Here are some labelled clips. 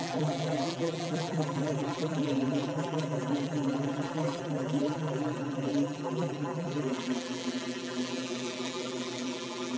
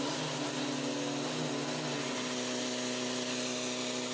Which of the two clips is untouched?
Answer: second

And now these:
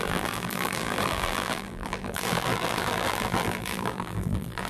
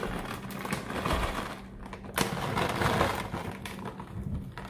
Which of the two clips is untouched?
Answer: second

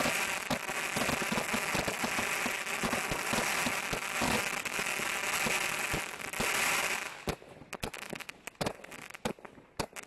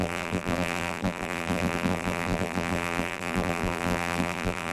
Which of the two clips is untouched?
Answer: first